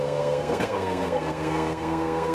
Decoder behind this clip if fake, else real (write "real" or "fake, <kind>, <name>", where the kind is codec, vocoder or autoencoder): fake, codec, SNAC